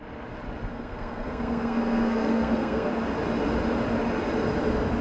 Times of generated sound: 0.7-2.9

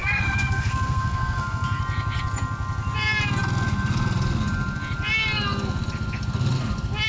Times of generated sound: 0.0-1.8